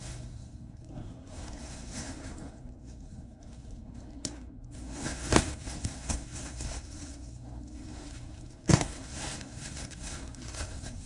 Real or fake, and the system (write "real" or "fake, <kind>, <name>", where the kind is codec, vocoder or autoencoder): fake, codec, SNAC